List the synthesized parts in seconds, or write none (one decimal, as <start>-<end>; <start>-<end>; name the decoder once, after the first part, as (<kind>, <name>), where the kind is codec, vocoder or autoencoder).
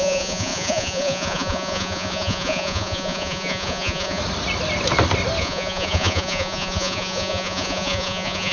0.0-4.2 (vocoder, Vocos); 5.4-8.5